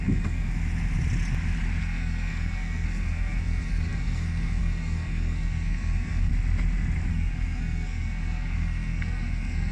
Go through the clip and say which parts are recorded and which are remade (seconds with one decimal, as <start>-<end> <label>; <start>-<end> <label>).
0.0-0.5 remade; 0.5-1.8 recorded; 1.8-6.3 remade; 6.3-7.1 recorded; 7.1-9.7 remade